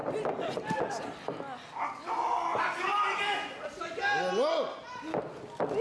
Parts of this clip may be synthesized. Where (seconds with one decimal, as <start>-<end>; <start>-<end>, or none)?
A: none